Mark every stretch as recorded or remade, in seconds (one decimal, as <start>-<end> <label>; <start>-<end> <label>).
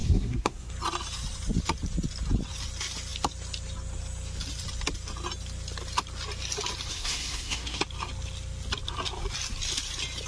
0.0-0.7 remade; 0.7-6.9 recorded; 6.9-7.8 remade; 7.8-10.3 recorded